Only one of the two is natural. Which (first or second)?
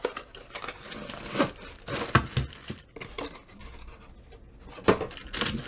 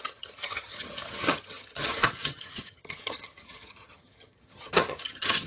first